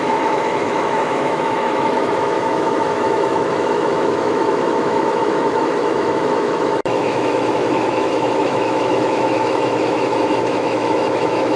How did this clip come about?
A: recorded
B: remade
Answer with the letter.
B